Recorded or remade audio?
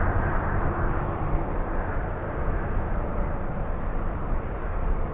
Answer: recorded